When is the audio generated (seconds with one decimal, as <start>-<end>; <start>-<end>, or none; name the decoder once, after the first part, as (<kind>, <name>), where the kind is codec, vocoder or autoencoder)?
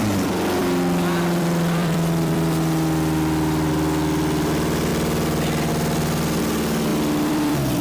0.6-3.7 (vocoder, BigVGAN v2); 4.9-5.7; 6.9-7.8